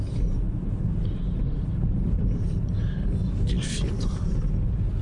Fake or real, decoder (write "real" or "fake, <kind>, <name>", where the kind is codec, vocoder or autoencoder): real